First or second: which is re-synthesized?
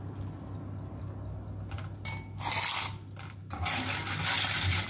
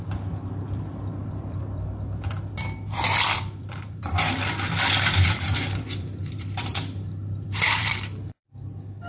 second